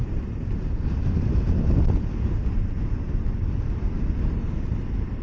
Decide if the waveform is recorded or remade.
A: recorded